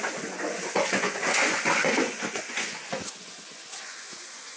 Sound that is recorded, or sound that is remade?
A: remade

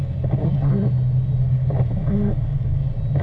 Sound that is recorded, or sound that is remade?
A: recorded